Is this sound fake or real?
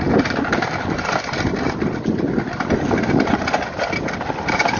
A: real